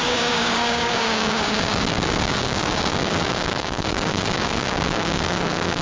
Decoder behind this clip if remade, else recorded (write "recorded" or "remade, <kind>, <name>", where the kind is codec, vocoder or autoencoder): remade, codec, DAC